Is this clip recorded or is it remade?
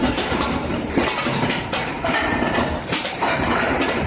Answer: remade